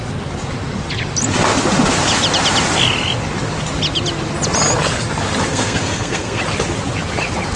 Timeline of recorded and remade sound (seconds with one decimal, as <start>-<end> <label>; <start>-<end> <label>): 0.0-5.5 recorded; 5.5-6.4 remade; 6.4-7.6 recorded